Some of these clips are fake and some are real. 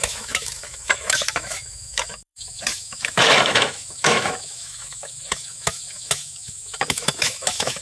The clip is fake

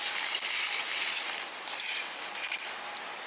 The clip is real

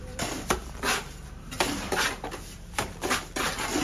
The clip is real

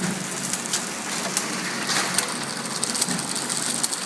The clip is real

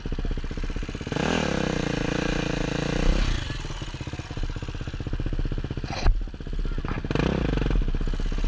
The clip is real